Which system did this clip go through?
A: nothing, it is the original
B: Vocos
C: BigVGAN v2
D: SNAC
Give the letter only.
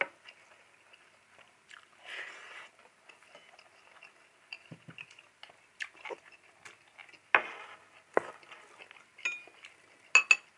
A